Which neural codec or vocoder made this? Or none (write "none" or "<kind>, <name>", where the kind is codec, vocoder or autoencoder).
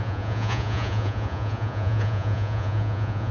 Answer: vocoder, Vocos